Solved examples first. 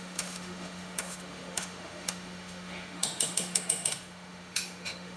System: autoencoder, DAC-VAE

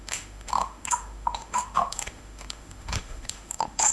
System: autoencoder, DAC-VAE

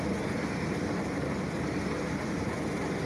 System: none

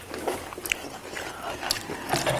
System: none